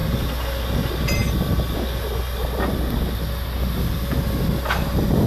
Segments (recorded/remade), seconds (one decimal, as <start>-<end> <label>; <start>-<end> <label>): 0.0-5.3 recorded